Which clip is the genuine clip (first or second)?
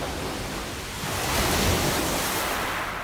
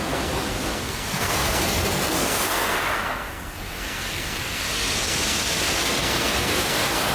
first